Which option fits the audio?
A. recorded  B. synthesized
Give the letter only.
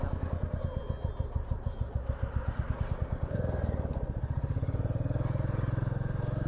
A